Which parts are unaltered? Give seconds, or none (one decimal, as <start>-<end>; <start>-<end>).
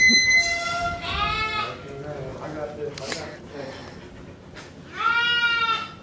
0.0-6.0